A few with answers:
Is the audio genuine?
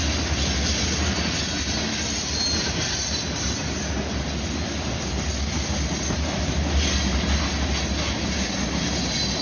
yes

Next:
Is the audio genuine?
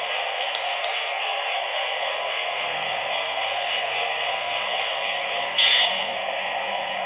no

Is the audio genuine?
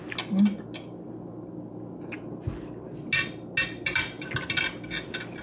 yes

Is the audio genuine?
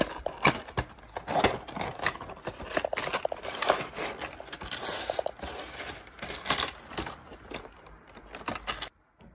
yes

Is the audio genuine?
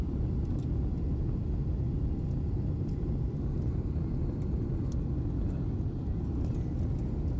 yes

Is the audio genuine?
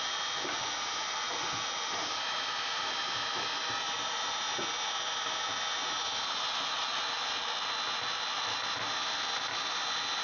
yes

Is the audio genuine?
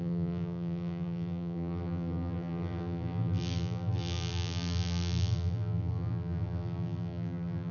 no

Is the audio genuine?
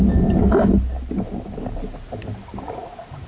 yes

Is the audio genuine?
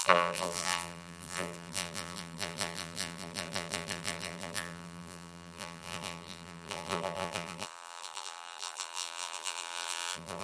no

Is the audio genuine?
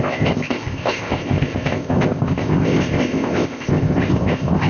no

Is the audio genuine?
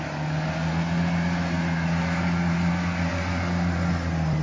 yes